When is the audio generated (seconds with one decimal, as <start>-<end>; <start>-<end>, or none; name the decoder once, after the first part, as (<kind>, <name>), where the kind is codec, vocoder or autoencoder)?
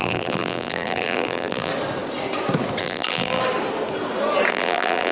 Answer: 0.0-1.7 (vocoder, BigVGAN v2); 2.8-3.4; 4.5-5.1